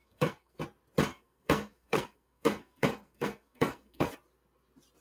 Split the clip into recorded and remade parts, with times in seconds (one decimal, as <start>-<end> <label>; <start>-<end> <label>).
0.0-0.6 remade; 0.6-1.1 recorded; 1.1-4.1 remade; 4.1-5.0 recorded